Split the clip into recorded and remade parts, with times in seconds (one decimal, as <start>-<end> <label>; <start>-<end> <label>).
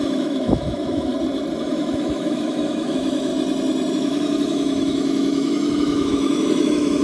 0.0-1.1 remade; 1.1-1.6 recorded; 1.6-3.3 remade; 3.3-3.9 recorded; 3.9-7.0 remade